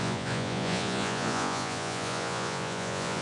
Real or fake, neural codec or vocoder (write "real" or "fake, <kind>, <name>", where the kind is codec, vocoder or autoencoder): fake, vocoder, Vocos